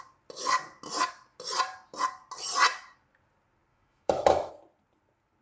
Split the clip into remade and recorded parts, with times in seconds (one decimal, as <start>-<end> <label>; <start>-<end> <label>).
0.0-3.7 recorded; 3.7-4.5 remade; 4.5-5.4 recorded

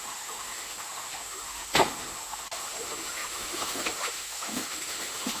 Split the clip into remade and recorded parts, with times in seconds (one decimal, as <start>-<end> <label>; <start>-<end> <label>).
0.0-5.4 remade

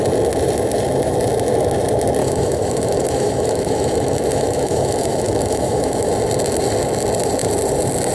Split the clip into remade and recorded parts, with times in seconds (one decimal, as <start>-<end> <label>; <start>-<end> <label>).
0.0-2.2 recorded; 2.2-6.1 remade; 6.1-8.1 recorded

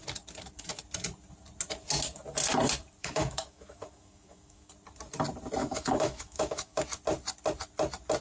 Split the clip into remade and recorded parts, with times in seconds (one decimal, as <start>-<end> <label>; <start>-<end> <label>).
0.0-3.0 recorded; 3.0-4.7 remade; 4.7-5.6 recorded; 5.6-6.8 remade; 6.8-8.2 recorded

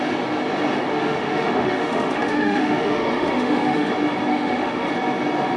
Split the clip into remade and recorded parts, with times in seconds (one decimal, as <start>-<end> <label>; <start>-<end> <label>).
0.0-0.9 recorded; 0.9-3.9 remade; 3.9-4.3 recorded; 4.3-4.9 remade; 4.9-5.6 recorded